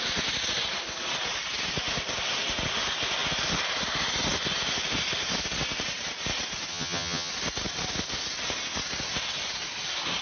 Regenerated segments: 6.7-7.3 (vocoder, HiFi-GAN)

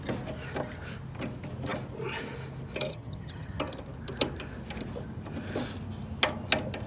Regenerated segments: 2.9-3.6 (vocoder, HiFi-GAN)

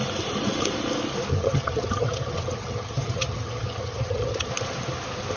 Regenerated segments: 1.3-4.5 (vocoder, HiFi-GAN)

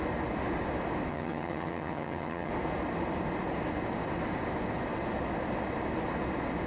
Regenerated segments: 1.1-2.5 (vocoder, HiFi-GAN)